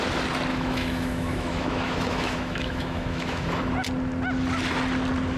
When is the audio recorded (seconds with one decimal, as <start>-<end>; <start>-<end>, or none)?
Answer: 0.0-0.5; 3.7-5.4

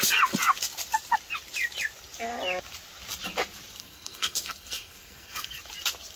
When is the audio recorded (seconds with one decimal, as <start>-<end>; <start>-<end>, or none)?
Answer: 0.0-3.8; 5.6-6.2

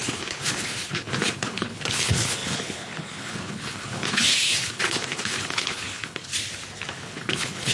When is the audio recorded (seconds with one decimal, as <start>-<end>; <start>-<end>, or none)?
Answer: 6.3-6.9

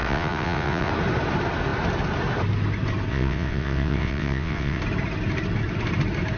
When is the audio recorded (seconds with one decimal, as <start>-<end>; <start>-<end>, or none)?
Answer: 0.9-3.1; 4.8-6.4

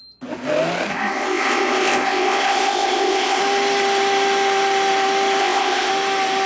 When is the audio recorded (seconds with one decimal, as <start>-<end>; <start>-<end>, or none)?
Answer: 0.0-0.9; 3.4-5.4; 5.9-6.5

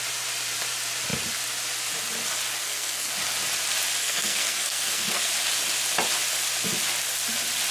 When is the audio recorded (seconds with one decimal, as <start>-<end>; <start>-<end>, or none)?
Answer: 0.0-2.6; 3.1-4.0; 5.3-7.7

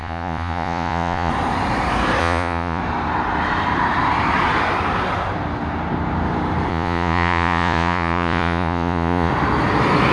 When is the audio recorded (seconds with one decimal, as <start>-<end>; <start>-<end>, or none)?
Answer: 1.3-2.2; 2.8-6.7; 9.3-10.1